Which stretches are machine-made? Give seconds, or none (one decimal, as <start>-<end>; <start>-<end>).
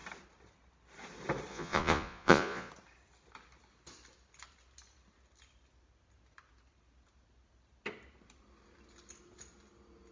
1.5-2.7